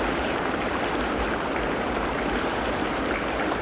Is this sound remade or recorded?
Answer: recorded